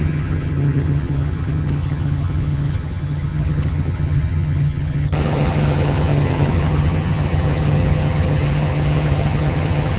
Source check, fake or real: fake